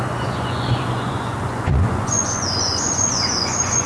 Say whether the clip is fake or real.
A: fake